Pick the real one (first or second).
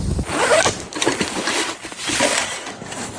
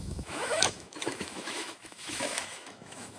first